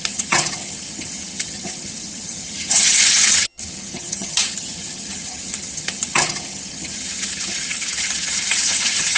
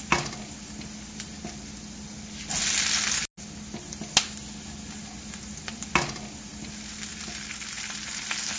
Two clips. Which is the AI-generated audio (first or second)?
first